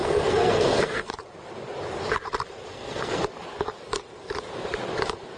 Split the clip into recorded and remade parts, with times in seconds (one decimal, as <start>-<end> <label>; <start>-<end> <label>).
0.0-1.1 remade; 1.1-2.7 recorded; 2.7-3.2 remade; 3.2-5.4 recorded